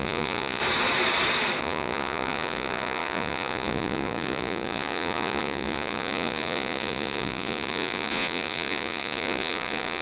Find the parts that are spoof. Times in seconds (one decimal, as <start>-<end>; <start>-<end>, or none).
0.0-0.6; 1.6-10.0